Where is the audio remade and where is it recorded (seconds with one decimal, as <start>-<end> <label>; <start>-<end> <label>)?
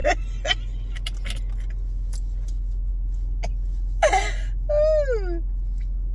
0.0-6.1 recorded